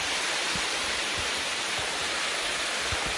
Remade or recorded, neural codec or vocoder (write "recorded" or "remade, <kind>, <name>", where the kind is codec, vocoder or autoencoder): recorded